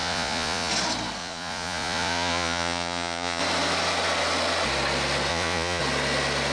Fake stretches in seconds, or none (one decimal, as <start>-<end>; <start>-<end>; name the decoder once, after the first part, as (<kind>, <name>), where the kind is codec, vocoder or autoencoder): 0.0-0.7 (vocoder, Vocos); 1.2-3.4; 5.3-5.8